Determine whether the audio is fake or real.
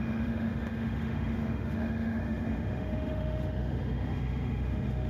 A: fake